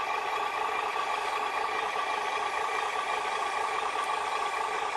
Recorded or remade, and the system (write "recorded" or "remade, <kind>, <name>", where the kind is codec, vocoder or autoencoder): remade, vocoder, BigVGAN v2